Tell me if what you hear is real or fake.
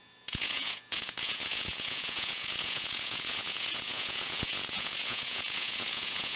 fake